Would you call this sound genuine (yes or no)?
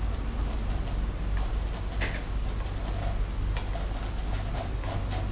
yes